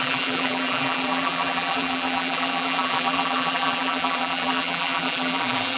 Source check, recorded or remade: remade